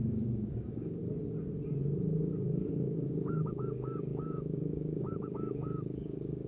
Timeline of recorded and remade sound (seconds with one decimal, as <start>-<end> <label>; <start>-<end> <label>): 0.0-1.0 remade; 1.0-2.3 recorded; 2.3-6.5 remade